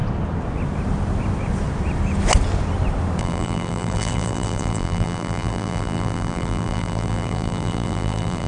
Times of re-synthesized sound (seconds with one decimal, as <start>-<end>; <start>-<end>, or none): 3.2-8.5